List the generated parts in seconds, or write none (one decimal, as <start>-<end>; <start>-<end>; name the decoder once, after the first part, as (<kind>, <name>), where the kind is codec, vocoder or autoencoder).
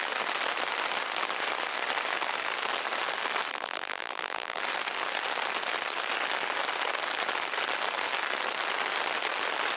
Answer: 3.5-4.6 (vocoder, BigVGAN v2)